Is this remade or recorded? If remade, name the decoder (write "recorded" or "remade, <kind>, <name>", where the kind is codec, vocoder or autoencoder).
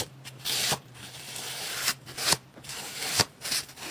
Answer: remade, vocoder, BigVGAN v2